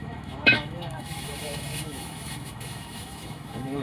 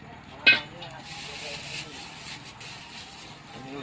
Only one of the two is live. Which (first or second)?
second